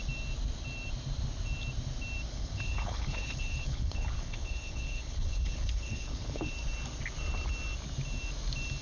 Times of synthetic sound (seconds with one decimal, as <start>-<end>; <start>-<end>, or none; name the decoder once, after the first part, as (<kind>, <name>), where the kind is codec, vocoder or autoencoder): 2.3-6.5 (codec, HILCodec)